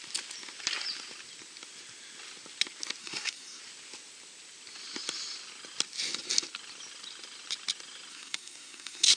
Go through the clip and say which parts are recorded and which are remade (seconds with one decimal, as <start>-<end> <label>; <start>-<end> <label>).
0.0-3.0 recorded; 3.0-3.6 remade; 3.6-8.1 recorded; 8.1-9.2 remade